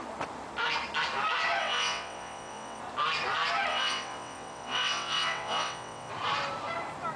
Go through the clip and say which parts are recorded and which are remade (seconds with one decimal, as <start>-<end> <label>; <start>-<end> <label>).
0.0-1.6 recorded; 1.6-2.8 remade; 2.8-3.7 recorded; 3.7-6.1 remade; 6.1-7.2 recorded